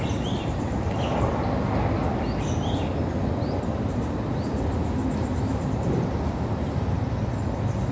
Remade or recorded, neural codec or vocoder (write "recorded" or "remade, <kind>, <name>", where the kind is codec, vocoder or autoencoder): recorded